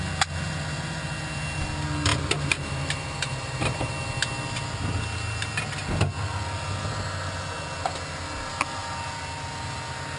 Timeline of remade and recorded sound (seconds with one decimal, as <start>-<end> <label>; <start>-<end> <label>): 0.0-2.1 recorded; 2.1-3.9 remade; 3.9-10.2 recorded